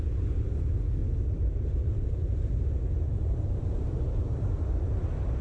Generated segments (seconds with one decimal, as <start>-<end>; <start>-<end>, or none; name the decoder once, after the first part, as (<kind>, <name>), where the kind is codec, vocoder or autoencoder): 1.0-4.2 (vocoder, BigVGAN v2)